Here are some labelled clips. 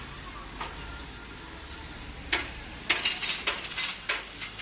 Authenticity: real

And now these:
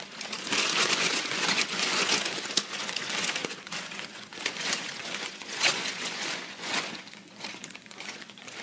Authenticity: fake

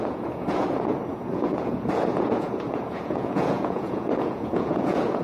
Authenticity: fake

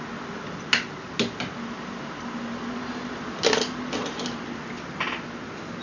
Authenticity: real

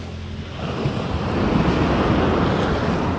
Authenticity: real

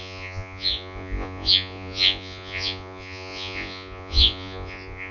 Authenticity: fake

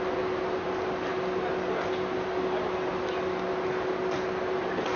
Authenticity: real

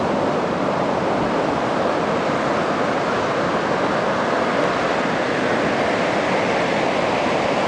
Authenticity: real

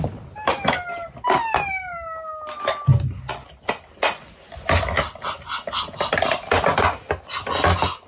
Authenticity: real